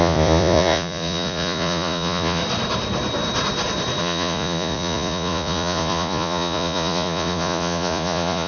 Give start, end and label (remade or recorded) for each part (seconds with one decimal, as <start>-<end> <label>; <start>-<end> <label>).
0.0-2.4 remade; 2.4-4.0 recorded; 4.0-8.5 remade